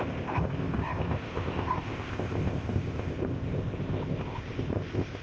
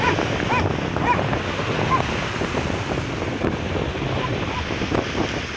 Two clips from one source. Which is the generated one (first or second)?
first